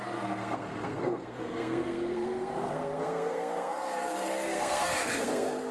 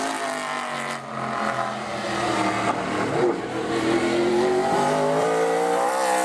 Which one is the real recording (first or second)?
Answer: second